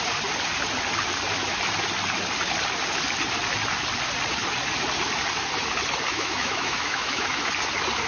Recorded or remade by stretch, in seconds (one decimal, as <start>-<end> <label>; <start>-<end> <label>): 0.0-6.1 recorded; 6.1-7.5 remade; 7.5-8.1 recorded